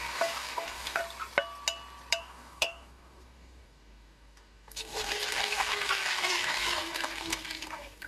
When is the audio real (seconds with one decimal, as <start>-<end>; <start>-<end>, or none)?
1.0-2.2